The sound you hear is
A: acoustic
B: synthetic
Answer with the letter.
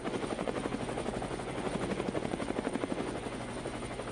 B